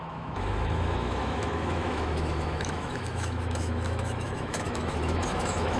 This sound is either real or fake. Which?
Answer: fake